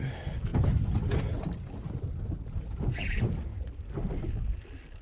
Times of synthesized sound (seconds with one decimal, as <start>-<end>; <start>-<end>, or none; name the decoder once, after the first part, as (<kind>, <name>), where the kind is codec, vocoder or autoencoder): none